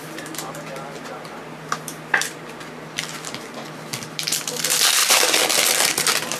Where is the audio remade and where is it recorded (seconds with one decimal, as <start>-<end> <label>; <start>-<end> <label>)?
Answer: 0.0-3.9 recorded; 3.9-4.6 remade; 4.6-5.0 recorded; 5.0-5.9 remade; 5.9-6.4 recorded